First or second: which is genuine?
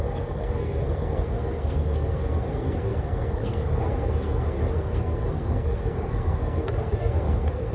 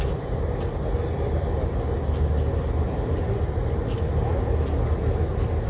second